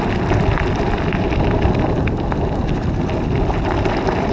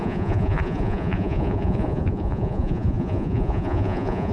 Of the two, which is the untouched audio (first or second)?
first